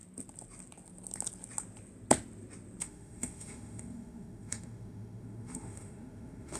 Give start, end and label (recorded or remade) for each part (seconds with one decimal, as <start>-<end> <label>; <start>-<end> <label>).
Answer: 0.0-2.8 recorded; 2.8-6.6 remade

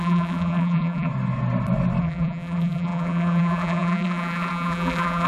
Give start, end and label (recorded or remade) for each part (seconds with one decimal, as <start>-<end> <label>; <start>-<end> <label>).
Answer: 0.0-1.1 remade; 1.1-2.0 recorded; 2.0-5.3 remade